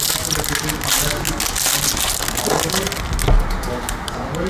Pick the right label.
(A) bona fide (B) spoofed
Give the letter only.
A